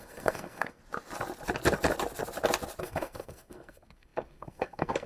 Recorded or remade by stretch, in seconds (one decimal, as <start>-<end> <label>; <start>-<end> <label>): 0.0-0.8 remade; 0.8-2.8 recorded; 2.8-5.1 remade